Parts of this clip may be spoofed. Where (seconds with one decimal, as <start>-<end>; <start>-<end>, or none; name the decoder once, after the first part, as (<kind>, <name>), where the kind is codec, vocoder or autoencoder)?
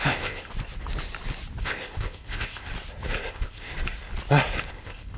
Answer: 0.0-0.5 (codec, ZipCodec); 1.6-2.7; 3.3-3.7; 4.7-5.2